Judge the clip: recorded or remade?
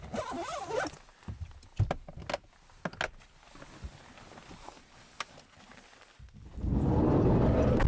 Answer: recorded